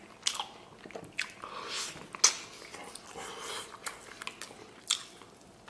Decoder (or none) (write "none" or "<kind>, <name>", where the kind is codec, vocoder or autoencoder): none